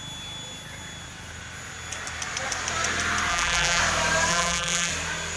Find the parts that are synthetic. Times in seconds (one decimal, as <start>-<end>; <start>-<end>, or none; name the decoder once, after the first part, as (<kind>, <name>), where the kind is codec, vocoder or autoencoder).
3.3-3.8 (vocoder, BigVGAN v2); 4.3-4.9

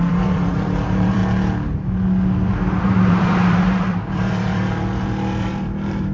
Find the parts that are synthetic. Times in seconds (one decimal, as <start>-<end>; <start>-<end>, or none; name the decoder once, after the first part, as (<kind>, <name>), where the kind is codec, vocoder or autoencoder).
0.0-1.2 (vocoder, BigVGAN v2); 2.8-6.1

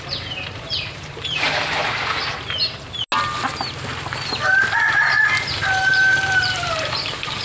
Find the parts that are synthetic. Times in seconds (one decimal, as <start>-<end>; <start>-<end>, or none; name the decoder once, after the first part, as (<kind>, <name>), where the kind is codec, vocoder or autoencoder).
0.0-1.8 (vocoder, BigVGAN v2); 5.4-7.4